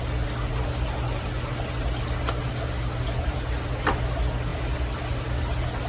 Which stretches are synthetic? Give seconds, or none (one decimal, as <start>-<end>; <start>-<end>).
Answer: none